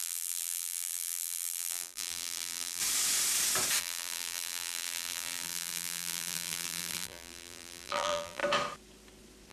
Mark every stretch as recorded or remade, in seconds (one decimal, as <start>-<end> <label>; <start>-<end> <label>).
0.0-2.8 remade; 2.8-3.8 recorded; 3.8-8.4 remade; 8.4-9.5 recorded

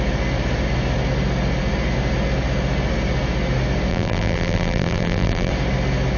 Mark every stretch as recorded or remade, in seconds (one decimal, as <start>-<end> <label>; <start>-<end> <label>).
0.0-3.9 recorded; 3.9-5.5 remade; 5.5-6.2 recorded